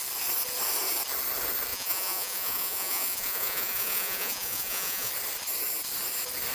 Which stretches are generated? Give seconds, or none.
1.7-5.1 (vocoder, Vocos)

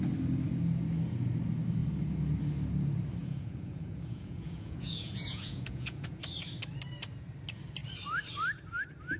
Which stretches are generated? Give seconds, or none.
3.2-6.2 (vocoder, Vocos)